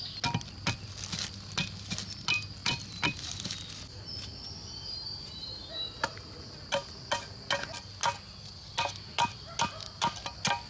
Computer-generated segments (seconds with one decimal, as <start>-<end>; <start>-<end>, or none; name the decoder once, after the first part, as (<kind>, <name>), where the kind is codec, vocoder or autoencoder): 2.6-4.0 (vocoder, BigVGAN v2)